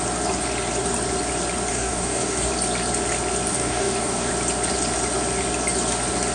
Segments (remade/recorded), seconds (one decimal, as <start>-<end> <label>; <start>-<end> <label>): 0.0-1.7 recorded; 1.7-2.5 remade; 2.5-3.5 recorded; 3.5-4.3 remade; 4.3-6.3 recorded